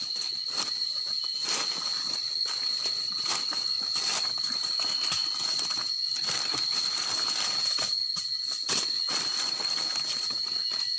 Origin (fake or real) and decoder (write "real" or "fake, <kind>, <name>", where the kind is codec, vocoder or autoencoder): real